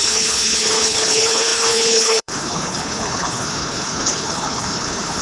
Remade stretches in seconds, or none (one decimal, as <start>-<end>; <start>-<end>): 0.0-5.2

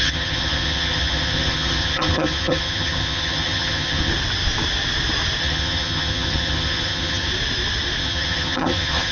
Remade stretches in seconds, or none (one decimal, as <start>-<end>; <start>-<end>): 0.0-4.1; 5.4-7.3; 8.0-9.1

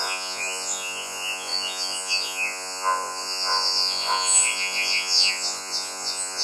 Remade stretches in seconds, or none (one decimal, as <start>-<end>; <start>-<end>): 0.0-6.4

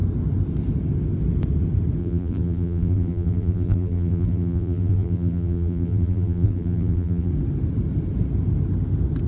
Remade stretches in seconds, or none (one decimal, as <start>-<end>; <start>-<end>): 2.0-7.3

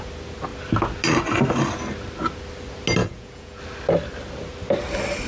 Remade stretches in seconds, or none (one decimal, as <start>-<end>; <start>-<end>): 3.0-3.6

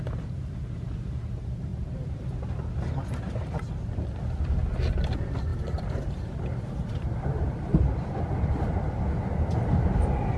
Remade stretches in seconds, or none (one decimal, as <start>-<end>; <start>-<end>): 1.7-2.2; 5.5-8.8

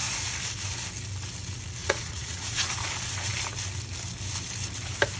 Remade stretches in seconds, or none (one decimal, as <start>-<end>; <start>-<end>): 1.8-2.7